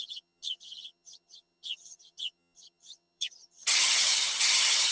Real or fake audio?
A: fake